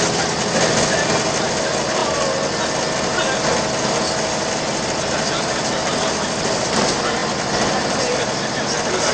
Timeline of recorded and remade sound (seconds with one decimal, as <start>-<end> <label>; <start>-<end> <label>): 0.0-9.1 recorded